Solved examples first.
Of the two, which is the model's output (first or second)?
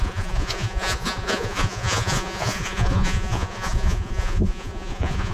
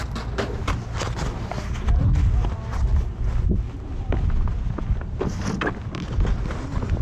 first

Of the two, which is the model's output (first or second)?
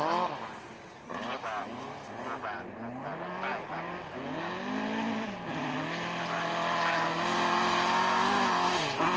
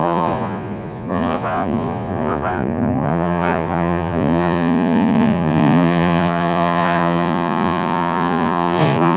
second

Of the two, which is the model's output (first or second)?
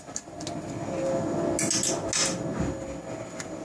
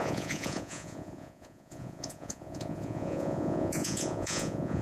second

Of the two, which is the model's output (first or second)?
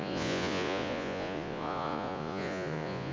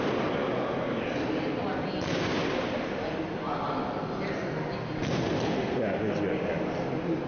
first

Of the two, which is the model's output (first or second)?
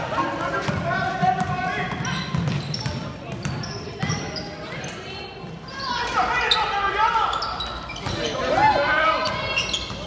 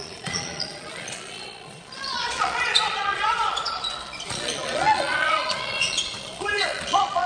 second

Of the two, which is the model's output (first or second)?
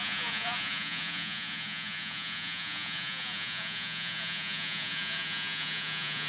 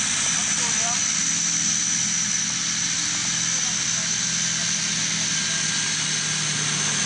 first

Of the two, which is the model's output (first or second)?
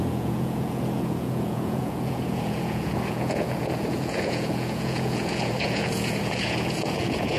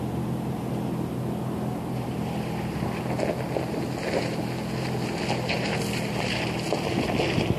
first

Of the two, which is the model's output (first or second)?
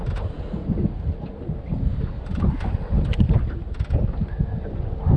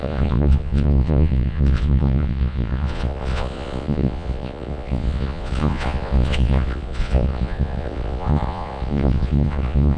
second